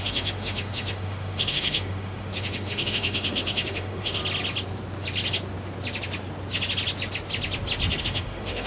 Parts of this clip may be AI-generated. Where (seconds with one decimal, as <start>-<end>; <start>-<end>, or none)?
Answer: 0.0-4.2; 8.0-8.7